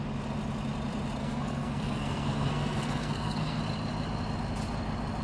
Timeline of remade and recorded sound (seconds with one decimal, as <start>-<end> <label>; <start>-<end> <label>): 0.0-1.2 recorded; 1.2-3.6 remade; 3.6-5.2 recorded